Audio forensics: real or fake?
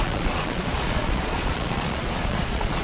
fake